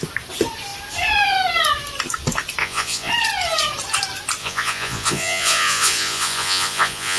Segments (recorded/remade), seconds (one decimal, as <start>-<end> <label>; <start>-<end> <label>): 0.0-2.6 recorded; 2.6-3.1 remade; 3.1-4.4 recorded; 4.4-7.2 remade